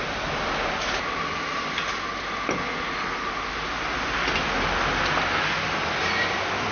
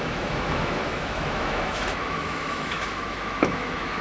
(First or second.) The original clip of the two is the first